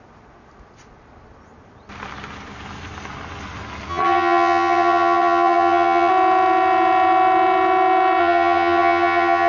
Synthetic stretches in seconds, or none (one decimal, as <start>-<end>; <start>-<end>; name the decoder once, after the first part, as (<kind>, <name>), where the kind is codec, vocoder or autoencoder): 3.9-6.1 (vocoder, HiFi-GAN); 8.2-9.5